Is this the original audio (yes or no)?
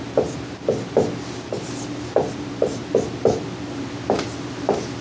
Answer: yes